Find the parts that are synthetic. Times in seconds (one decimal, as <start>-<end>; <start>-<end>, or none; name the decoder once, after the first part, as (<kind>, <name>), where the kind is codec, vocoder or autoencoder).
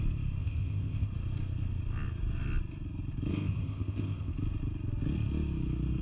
0.4-1.1 (codec, ZipCodec); 3.3-4.3